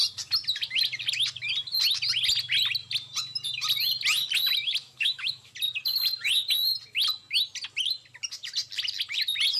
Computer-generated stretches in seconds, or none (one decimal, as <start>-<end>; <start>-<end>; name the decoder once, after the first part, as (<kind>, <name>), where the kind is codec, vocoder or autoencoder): 4.8-5.5 (autoencoder, DAC-VAE)